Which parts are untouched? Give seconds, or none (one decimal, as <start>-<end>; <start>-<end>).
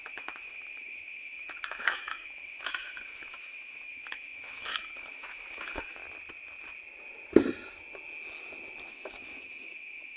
6.0-8.9